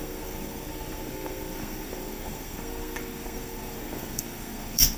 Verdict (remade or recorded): remade